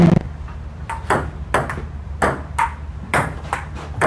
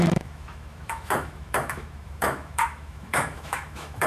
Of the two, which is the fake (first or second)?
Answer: second